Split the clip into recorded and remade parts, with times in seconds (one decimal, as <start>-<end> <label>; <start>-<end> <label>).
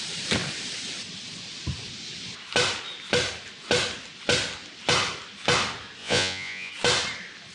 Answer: 0.0-6.0 recorded; 6.0-6.7 remade; 6.7-7.5 recorded